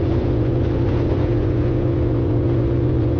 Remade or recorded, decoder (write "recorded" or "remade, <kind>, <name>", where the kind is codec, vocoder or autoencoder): remade, vocoder, Vocos